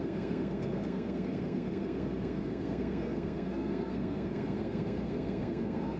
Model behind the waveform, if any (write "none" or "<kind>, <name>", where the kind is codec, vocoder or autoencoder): codec, SNAC